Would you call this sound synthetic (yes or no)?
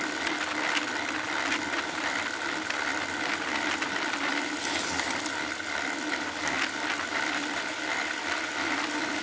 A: no